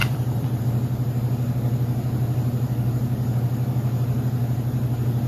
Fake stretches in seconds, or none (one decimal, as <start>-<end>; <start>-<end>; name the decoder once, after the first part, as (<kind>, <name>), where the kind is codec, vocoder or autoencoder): 0.0-0.6 (vocoder, BigVGAN v2)